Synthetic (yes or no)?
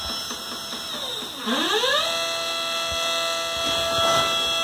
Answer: no